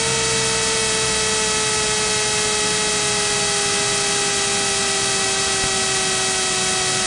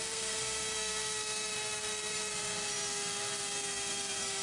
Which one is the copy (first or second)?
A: second